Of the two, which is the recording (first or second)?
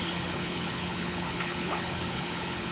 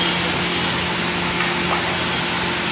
second